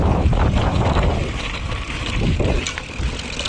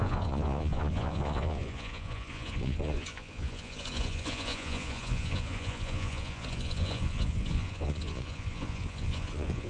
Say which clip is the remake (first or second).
second